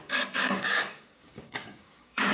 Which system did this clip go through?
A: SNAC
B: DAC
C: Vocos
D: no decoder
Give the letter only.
B